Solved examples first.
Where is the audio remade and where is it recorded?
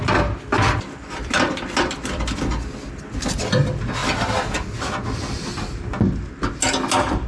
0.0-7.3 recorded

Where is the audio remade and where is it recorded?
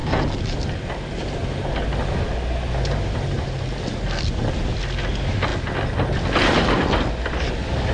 0.0-7.9 recorded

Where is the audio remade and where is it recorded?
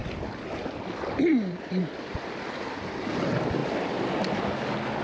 0.0-1.3 recorded; 1.3-1.8 remade; 1.8-5.0 recorded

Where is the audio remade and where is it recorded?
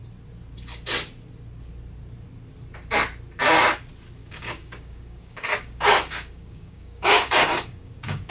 0.0-4.2 recorded; 4.2-8.3 remade